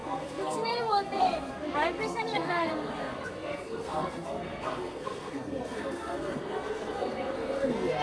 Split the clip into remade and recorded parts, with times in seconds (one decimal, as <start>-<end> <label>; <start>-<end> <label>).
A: 0.0-8.0 remade